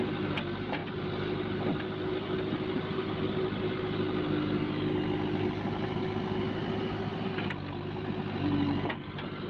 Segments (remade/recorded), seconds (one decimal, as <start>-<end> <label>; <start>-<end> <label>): 0.0-9.5 recorded